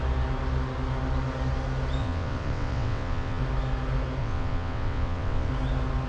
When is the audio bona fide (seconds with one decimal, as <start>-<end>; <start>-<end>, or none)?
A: 0.0-2.0; 3.4-4.2; 5.5-6.1